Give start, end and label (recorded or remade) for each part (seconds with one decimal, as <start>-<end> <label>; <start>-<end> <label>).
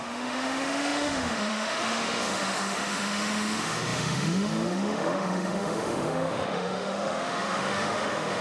0.0-8.4 remade